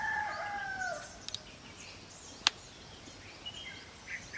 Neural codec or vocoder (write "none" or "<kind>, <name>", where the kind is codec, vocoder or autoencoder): none